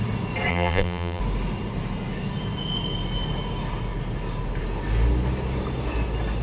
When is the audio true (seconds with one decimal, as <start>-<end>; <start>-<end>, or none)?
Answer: 0.0-0.5; 1.2-6.4